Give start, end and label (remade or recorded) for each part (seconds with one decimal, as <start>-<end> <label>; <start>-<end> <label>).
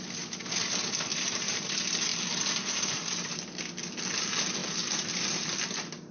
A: 0.0-1.1 recorded; 1.1-1.7 remade; 1.7-2.1 recorded; 2.1-3.7 remade; 3.7-6.1 recorded